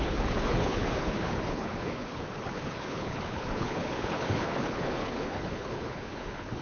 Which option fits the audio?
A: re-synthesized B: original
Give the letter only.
A